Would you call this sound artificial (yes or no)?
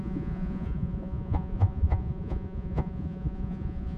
yes